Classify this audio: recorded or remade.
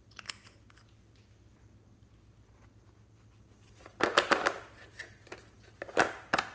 recorded